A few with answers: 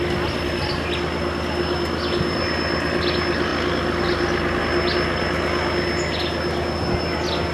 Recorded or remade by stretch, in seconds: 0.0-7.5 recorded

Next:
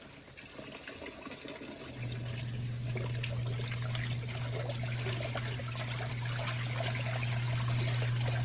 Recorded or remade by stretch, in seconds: 0.0-8.4 recorded